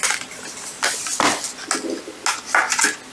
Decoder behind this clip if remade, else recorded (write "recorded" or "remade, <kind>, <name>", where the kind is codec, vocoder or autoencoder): recorded